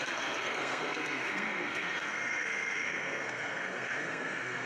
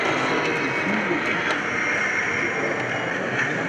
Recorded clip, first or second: second